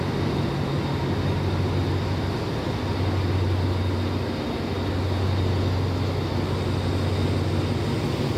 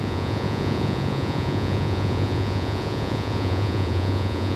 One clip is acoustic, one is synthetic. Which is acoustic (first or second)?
first